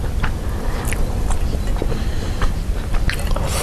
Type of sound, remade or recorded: remade